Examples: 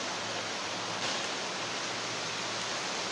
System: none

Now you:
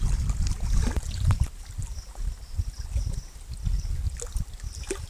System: none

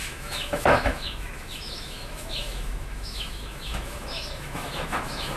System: autoencoder, DAC-VAE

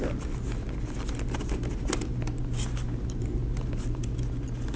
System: none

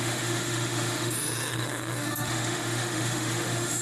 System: autoencoder, DAC-VAE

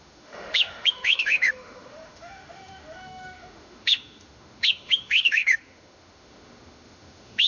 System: autoencoder, DAC-VAE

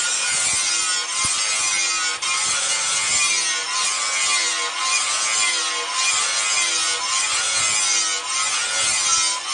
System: none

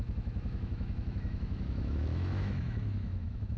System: autoencoder, DAC-VAE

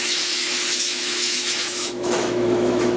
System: autoencoder, DAC-VAE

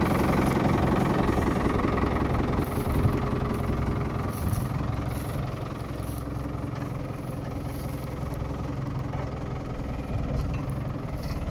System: none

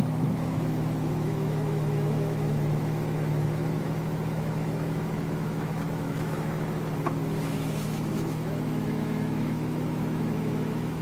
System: autoencoder, DAC-VAE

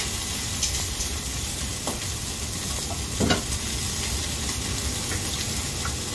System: none